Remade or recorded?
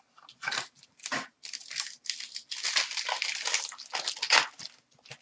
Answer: recorded